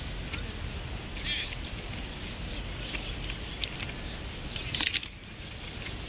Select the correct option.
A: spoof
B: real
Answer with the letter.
B